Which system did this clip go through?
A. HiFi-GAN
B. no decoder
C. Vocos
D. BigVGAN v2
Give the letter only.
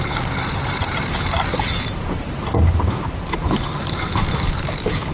D